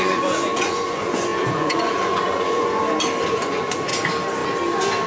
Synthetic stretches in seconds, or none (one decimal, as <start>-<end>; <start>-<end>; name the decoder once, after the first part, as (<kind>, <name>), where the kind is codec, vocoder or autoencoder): 0.0-2.8 (vocoder, Vocos); 3.3-3.9